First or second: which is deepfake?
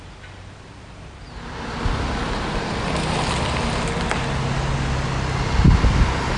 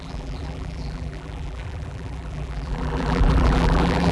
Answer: second